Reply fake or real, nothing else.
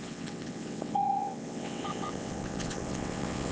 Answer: fake